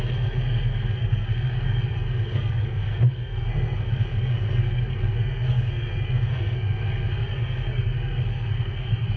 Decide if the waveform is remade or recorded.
remade